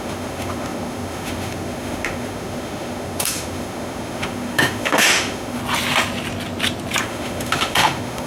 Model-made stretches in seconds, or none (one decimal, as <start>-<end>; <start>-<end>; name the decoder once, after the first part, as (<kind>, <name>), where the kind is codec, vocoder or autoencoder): 0.0-5.6 (autoencoder, DAC-VAE); 7.0-8.3

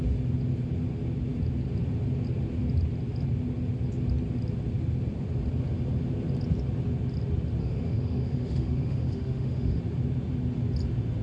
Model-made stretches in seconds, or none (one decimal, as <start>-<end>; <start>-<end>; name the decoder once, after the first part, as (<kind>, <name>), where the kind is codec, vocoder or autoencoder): 7.6-9.8 (autoencoder, DAC-VAE)

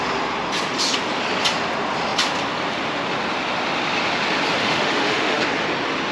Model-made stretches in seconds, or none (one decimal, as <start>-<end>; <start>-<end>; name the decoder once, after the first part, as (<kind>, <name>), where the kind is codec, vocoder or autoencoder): 4.6-5.4 (autoencoder, DAC-VAE)

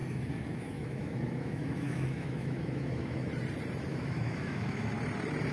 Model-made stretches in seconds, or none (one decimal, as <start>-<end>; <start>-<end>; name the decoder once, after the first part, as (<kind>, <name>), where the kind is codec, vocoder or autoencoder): 0.0-3.3 (autoencoder, DAC-VAE); 3.9-4.9

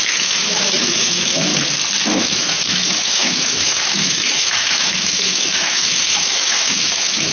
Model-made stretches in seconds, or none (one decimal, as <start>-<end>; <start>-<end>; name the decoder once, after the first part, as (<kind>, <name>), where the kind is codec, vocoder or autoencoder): 0.0-1.5 (autoencoder, DAC-VAE); 2.2-7.3

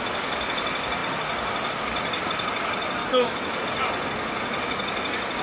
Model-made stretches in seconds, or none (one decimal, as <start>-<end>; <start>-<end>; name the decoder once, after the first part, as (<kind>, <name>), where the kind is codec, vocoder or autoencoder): 3.0-3.6 (autoencoder, DAC-VAE)